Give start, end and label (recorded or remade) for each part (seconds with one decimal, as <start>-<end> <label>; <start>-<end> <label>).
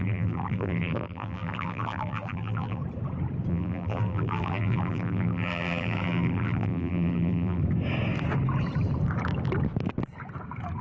0.0-2.8 remade; 2.8-3.5 recorded; 3.5-7.6 remade; 7.6-10.8 recorded